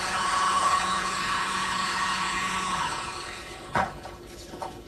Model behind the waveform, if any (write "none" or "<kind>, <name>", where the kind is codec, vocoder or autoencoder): codec, HILCodec